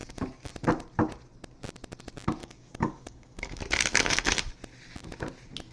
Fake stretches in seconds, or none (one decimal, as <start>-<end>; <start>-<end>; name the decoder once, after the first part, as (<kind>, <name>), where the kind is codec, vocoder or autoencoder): 0.0-0.5 (codec, DAC); 2.4-4.5